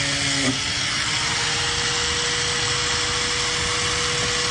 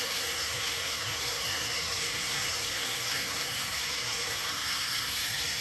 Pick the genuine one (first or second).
first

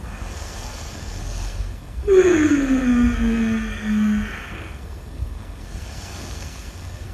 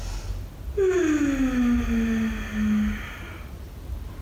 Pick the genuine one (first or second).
second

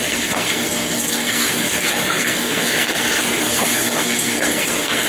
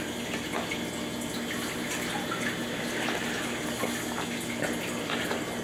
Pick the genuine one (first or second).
second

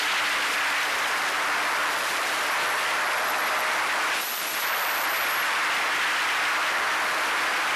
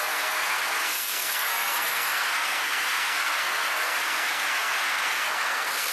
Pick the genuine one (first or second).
first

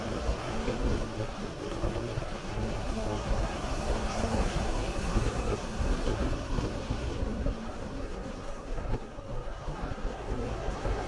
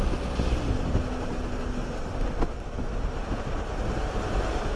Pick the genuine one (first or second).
second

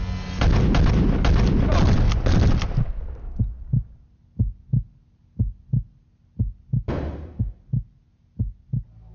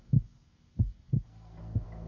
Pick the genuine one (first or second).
first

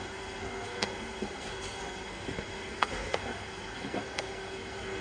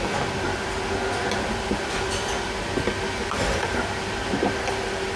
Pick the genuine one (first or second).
second